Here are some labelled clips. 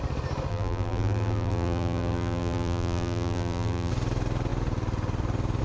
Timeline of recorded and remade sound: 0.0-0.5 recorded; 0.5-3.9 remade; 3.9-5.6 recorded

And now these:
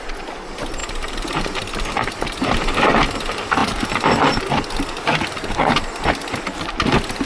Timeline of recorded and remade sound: 0.0-7.3 recorded

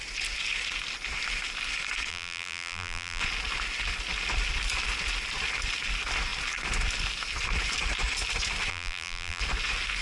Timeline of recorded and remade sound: 0.0-2.1 recorded; 2.1-3.2 remade; 3.2-8.7 recorded; 8.7-9.4 remade; 9.4-10.0 recorded

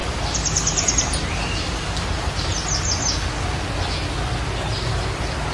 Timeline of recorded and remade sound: 0.0-2.5 remade; 2.5-5.5 recorded

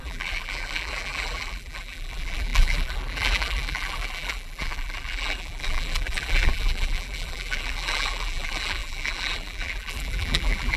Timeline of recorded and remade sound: 0.0-10.8 remade

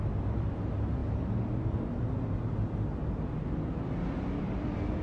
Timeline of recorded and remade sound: 0.0-5.0 recorded